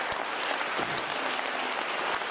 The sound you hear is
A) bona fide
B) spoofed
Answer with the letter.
A